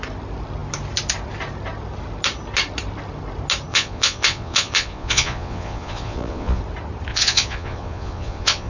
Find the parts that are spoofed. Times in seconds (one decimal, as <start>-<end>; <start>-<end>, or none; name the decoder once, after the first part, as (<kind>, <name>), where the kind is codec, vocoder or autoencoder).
3.7-6.6 (vocoder, Vocos); 7.1-8.7